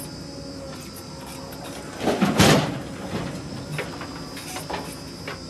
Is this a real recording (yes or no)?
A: yes